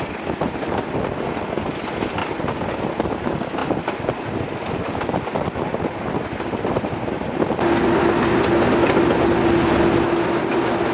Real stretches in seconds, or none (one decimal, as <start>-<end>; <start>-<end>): 0.0-10.9